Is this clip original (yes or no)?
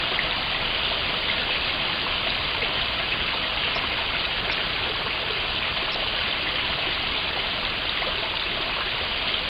yes